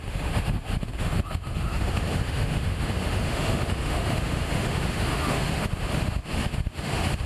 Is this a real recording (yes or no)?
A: no